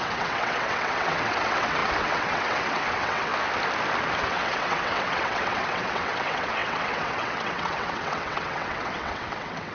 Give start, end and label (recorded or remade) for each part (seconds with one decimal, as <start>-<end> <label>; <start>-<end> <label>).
0.0-3.3 remade; 3.3-4.2 recorded; 4.2-9.7 remade